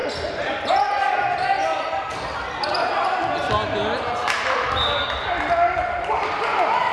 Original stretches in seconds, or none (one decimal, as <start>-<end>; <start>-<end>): 0.0-6.9